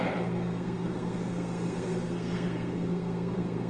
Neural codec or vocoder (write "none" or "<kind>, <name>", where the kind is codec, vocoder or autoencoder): codec, SNAC